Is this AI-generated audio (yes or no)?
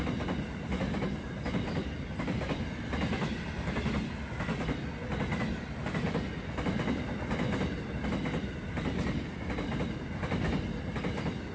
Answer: no